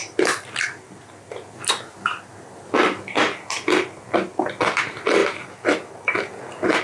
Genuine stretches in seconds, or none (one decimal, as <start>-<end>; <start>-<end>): 0.0-5.2; 6.3-6.8